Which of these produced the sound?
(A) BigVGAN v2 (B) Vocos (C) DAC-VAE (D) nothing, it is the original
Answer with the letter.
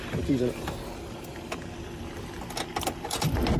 A